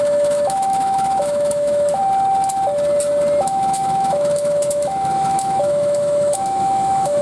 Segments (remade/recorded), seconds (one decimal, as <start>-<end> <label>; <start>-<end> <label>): 0.0-2.0 remade; 2.0-3.4 recorded; 3.4-7.2 remade